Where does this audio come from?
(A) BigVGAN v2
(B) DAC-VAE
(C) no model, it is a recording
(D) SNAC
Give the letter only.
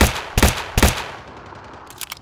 C